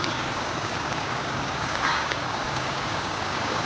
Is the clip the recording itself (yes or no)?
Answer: no